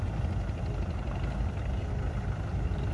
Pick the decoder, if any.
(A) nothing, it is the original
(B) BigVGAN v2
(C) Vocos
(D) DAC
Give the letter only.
A